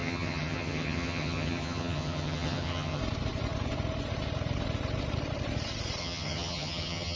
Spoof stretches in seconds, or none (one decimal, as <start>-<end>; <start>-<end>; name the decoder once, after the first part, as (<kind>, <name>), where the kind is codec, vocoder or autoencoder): 0.0-3.0 (vocoder, HiFi-GAN); 6.0-7.2